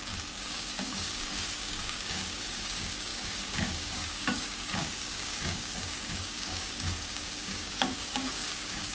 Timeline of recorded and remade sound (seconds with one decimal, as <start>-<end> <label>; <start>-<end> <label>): 0.0-8.9 remade